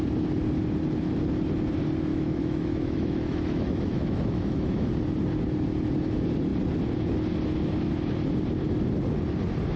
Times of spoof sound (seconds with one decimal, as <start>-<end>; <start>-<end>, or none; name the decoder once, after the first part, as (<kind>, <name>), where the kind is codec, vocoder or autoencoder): 2.1-4.9 (autoencoder, DAC-VAE)